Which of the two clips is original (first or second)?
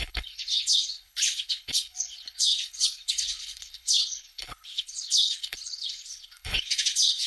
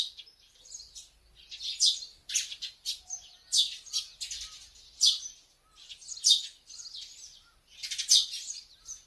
second